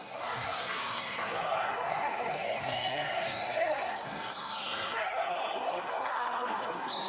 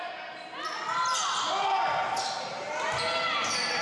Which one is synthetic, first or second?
first